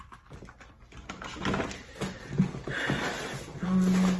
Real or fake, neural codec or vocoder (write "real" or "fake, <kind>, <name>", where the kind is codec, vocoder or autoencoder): real